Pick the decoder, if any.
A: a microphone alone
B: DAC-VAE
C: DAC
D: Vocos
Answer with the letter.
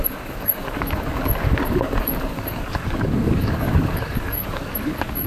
C